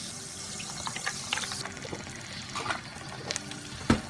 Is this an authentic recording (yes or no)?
yes